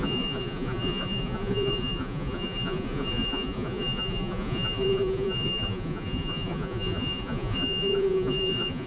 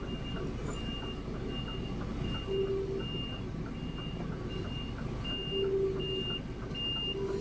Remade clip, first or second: first